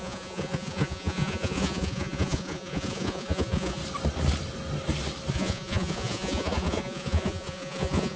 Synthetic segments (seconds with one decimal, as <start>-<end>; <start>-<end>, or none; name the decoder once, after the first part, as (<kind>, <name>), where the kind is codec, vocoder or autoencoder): 0.0-3.8 (vocoder, Vocos); 5.3-8.2